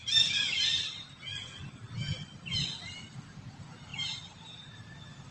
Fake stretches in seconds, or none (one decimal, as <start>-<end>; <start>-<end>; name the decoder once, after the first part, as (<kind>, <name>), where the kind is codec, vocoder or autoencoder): none